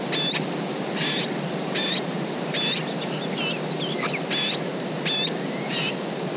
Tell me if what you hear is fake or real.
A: real